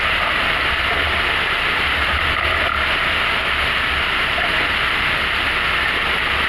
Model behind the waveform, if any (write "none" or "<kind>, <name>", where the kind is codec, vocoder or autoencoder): none